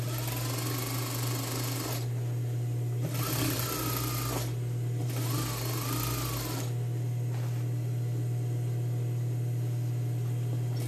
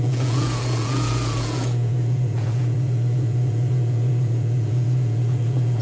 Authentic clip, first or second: first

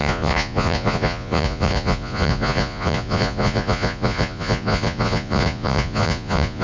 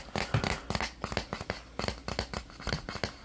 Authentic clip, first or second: second